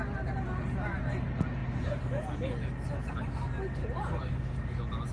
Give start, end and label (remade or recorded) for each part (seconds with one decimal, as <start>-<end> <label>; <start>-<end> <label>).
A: 0.0-3.8 recorded; 3.8-4.5 remade; 4.5-5.1 recorded